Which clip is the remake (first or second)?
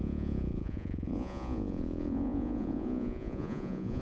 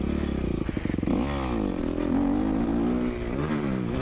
first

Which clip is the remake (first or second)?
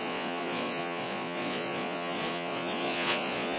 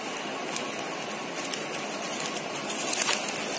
first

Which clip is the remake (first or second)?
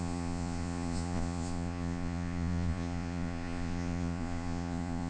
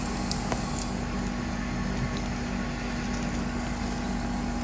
first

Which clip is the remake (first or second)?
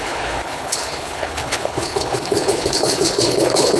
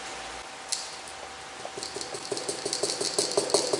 first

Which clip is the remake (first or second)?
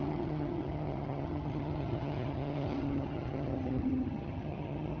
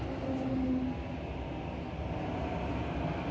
first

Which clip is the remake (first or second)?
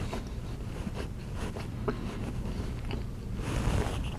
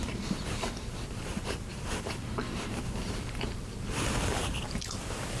second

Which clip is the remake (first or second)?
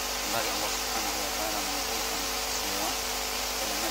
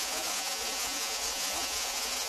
second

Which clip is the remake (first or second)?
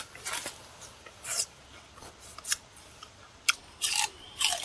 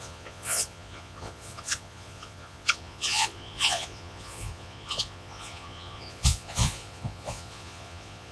second